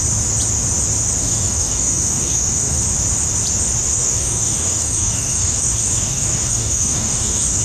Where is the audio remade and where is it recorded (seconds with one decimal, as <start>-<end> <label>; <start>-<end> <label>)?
0.0-1.2 recorded; 1.2-2.8 remade; 2.8-3.9 recorded; 3.9-7.6 remade

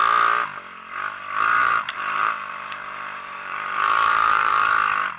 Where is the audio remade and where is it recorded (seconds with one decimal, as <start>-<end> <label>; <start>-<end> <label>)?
0.0-1.6 recorded; 1.6-4.7 remade; 4.7-5.2 recorded

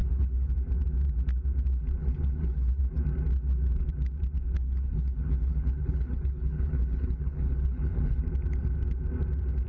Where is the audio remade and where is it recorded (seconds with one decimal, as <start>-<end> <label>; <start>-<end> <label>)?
0.0-0.5 remade; 0.5-2.0 recorded; 2.0-2.8 remade; 2.8-4.6 recorded; 4.6-8.2 remade; 8.2-9.7 recorded